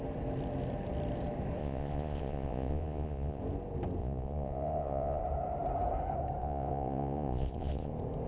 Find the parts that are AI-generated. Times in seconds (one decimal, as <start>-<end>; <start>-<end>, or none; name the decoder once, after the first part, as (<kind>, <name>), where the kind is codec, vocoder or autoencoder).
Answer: 1.6-3.4 (vocoder, Vocos); 4.0-5.2; 6.4-7.9